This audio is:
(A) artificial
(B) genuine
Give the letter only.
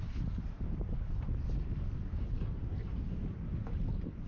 B